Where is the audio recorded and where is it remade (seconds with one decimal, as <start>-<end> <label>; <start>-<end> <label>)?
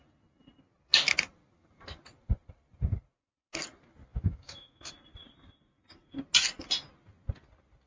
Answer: 0.0-4.1 recorded; 4.1-4.9 remade; 4.9-7.9 recorded